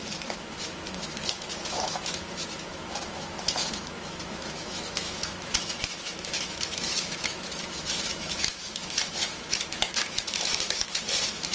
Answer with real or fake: fake